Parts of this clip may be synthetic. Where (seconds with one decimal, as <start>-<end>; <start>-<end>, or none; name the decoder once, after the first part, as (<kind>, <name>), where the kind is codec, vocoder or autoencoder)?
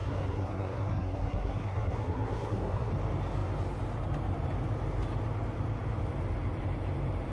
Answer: 0.0-2.9 (codec, SNAC)